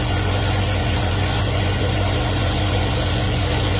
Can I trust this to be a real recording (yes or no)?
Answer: no